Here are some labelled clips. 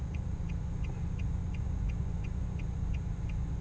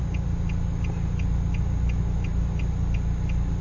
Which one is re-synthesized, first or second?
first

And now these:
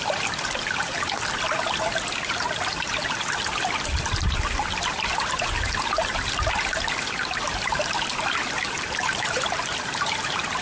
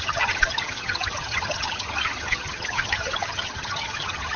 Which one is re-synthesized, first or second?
second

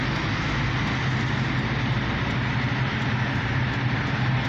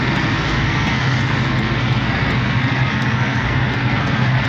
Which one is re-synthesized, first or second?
second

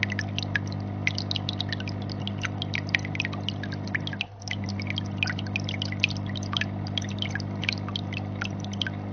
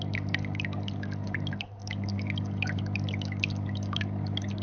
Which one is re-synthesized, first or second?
second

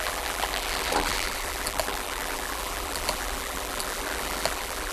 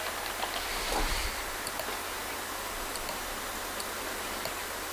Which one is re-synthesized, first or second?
first